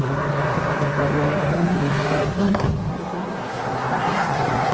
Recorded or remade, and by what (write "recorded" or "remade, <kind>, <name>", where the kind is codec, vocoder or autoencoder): remade, codec, SNAC